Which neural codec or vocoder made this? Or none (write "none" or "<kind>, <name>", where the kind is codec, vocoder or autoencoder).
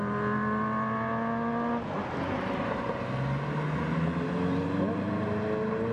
none